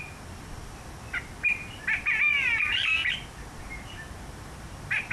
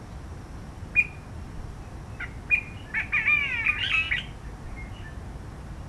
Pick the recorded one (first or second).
second